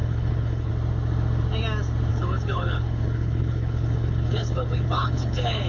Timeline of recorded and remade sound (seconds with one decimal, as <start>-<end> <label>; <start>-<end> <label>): 0.0-0.7 remade; 0.7-2.1 recorded; 2.1-5.7 remade